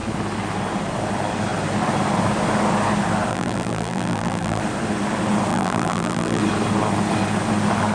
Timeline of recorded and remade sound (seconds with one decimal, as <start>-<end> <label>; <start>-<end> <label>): 0.0-3.3 recorded; 3.3-4.6 remade; 4.6-5.5 recorded; 5.5-6.4 remade; 6.4-7.9 recorded